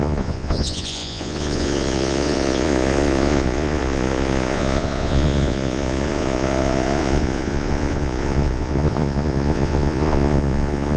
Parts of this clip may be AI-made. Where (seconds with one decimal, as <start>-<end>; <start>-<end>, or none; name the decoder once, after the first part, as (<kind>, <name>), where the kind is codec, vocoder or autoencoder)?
0.0-11.0 (vocoder, Vocos)